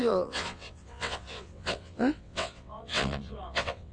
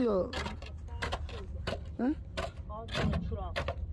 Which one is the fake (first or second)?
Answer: first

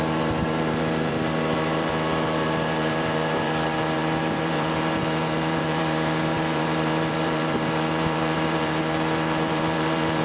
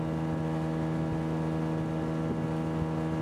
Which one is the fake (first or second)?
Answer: first